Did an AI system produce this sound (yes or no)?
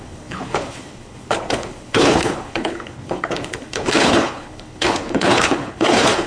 yes